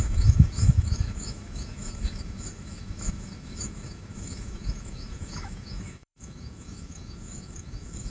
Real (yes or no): no